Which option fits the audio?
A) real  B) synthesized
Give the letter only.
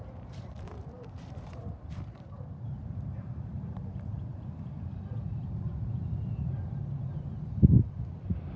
B